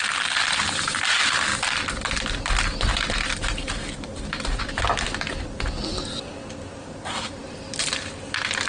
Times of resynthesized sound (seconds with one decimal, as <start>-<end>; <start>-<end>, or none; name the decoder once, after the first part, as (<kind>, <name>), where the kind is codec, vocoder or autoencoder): none